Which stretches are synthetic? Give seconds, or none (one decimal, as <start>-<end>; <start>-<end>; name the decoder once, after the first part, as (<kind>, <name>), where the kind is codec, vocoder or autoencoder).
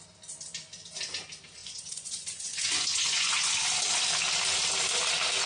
1.6-3.5 (vocoder, Vocos)